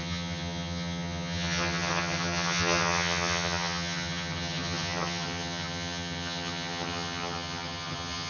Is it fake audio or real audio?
fake